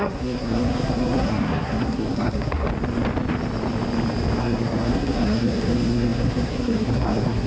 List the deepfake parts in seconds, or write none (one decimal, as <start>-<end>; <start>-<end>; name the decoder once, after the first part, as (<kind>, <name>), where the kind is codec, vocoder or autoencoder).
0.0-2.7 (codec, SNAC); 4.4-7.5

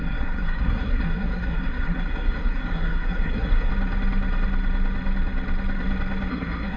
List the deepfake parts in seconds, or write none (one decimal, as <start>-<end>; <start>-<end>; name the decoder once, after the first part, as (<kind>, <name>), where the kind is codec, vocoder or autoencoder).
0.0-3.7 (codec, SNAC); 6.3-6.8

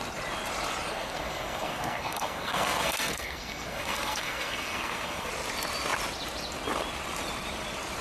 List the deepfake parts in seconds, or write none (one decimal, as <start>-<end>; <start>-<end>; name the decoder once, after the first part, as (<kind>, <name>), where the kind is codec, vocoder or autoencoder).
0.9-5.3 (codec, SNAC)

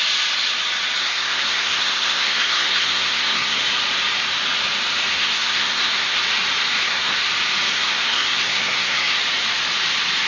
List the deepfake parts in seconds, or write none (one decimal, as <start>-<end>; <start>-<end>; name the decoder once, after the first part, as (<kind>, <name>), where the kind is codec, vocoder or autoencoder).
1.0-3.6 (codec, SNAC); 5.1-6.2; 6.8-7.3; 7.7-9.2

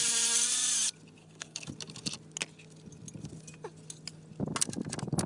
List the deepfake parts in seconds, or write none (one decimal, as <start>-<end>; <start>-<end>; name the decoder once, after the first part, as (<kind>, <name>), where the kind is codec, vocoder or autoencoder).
1.2-1.7 (codec, SNAC)

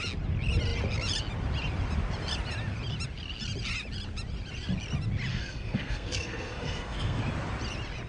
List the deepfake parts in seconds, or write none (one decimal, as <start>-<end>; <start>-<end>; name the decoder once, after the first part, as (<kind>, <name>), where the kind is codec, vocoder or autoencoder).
5.3-7.2 (codec, SNAC)